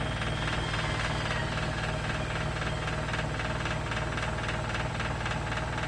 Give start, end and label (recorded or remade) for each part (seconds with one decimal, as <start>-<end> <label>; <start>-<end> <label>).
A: 0.0-5.9 recorded